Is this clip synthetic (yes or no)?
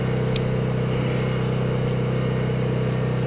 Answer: no